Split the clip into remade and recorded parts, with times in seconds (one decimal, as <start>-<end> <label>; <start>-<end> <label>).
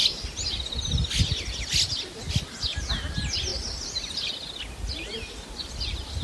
0.0-6.2 recorded